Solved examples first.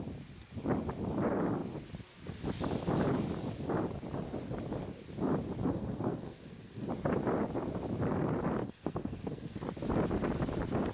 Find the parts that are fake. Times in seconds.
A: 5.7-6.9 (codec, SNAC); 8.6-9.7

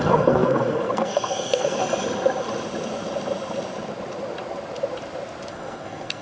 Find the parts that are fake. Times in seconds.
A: 0.0-1.8 (codec, SNAC); 5.5-6.2

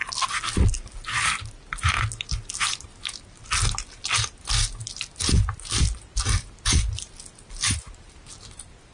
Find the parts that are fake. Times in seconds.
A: none